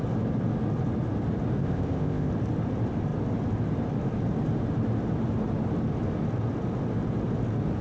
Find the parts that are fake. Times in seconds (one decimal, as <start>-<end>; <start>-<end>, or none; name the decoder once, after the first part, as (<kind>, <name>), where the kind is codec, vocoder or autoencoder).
1.6-2.3 (codec, ZipCodec)